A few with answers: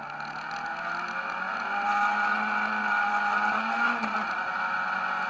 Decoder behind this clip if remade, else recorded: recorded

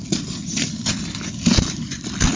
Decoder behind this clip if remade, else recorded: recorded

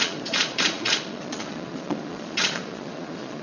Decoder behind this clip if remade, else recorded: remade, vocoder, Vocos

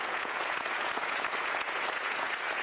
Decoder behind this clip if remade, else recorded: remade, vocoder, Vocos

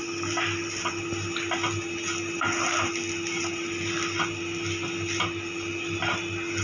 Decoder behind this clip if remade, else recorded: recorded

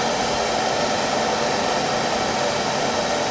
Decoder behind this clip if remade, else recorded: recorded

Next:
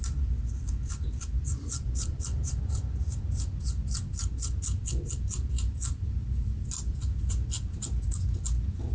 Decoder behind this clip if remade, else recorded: recorded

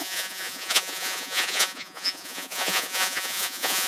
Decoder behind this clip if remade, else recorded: remade, vocoder, Vocos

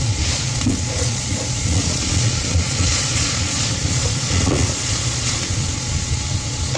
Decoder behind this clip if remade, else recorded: remade, vocoder, Vocos